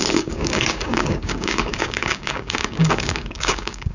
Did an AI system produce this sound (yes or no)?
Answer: yes